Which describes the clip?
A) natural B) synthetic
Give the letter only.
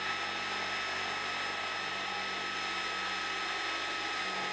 A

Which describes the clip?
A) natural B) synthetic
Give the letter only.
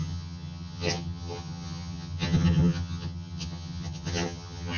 B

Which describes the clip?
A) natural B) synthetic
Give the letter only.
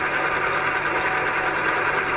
A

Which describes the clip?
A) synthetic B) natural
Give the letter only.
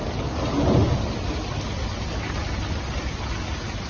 B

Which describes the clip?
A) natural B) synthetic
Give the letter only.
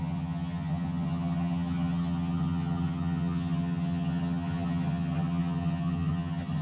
B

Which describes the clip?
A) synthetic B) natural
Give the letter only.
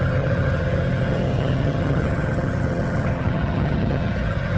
A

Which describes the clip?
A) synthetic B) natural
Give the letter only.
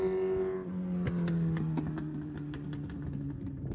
B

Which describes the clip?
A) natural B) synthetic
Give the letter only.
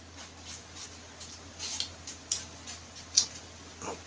A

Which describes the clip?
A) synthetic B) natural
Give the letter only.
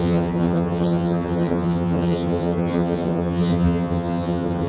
A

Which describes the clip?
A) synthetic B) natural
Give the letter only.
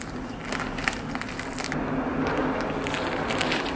B